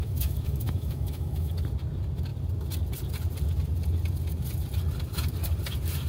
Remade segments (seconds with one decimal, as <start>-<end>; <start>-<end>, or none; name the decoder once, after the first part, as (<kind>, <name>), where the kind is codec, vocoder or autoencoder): 0.0-1.5 (autoencoder, DAC-VAE)